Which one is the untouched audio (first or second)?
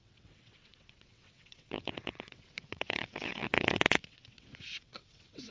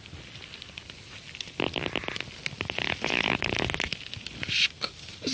second